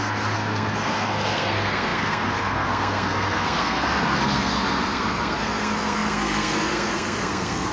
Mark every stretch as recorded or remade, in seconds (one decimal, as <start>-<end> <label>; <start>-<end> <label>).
0.0-7.7 remade

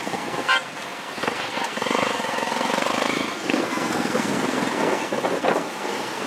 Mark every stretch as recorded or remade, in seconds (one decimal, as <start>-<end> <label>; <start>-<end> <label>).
0.0-6.3 remade

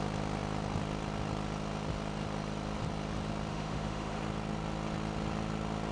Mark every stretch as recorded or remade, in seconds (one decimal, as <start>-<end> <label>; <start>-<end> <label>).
0.0-3.5 recorded; 3.5-4.2 remade; 4.2-5.9 recorded

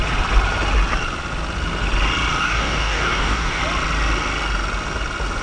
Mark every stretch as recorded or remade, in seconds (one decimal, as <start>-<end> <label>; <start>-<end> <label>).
0.0-2.4 recorded; 2.4-3.6 remade; 3.6-5.4 recorded

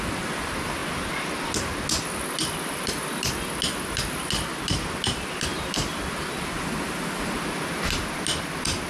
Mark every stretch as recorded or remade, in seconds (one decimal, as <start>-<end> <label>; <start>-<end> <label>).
0.0-8.9 recorded

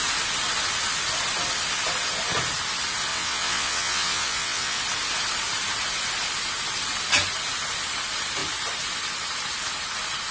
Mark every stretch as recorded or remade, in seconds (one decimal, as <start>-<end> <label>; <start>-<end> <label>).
0.0-3.1 recorded; 3.1-4.8 remade; 4.8-10.3 recorded